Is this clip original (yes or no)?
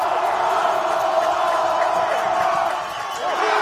yes